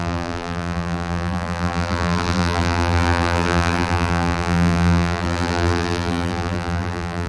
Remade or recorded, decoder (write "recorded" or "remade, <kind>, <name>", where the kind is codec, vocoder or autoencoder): remade, vocoder, BigVGAN v2